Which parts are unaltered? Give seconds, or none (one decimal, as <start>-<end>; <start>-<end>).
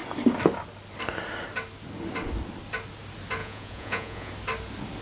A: 0.0-3.4; 4.3-5.0